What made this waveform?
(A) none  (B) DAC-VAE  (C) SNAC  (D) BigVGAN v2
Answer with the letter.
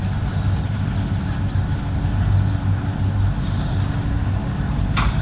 A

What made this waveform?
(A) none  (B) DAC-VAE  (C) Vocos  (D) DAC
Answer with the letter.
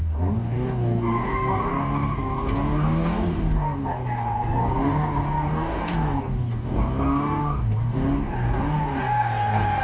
D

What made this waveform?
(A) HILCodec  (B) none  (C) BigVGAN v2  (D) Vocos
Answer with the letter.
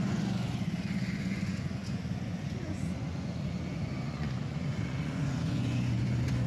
D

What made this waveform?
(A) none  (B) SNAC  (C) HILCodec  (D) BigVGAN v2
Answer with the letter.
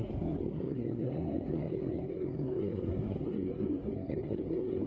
B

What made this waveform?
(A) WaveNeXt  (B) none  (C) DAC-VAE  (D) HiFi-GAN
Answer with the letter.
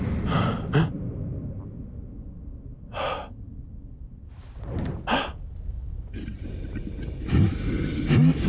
B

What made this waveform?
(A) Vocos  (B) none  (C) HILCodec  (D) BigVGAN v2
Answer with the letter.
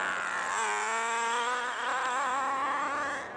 B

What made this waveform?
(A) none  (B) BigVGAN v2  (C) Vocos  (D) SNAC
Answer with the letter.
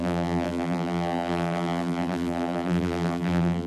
B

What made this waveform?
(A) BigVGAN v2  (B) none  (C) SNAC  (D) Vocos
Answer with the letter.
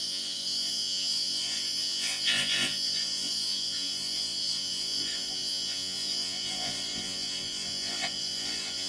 D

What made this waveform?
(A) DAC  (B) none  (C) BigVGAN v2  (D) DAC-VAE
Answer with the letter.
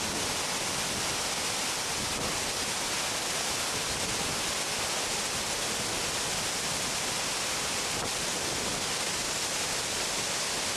B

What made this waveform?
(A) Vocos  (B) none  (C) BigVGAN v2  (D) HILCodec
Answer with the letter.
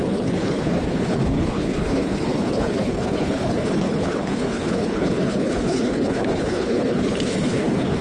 D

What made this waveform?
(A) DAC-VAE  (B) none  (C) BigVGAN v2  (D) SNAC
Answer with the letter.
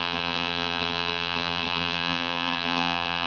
C